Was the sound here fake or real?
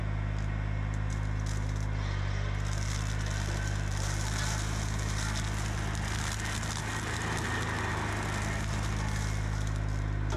real